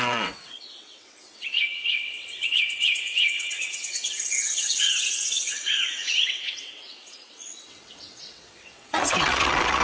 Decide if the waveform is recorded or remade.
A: remade